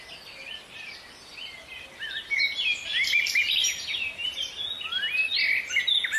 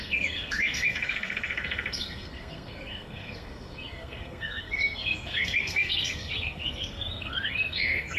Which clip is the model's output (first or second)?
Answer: second